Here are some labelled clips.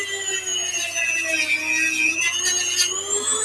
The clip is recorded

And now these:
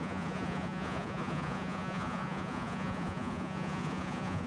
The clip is remade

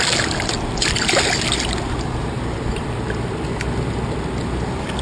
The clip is recorded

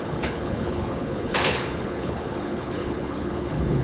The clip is remade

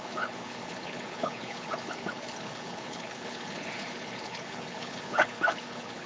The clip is remade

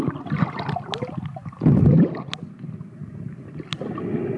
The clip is recorded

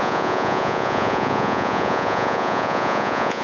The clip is remade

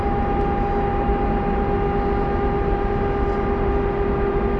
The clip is recorded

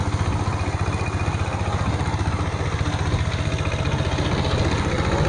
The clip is recorded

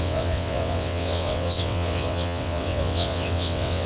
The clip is remade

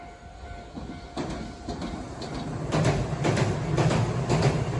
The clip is recorded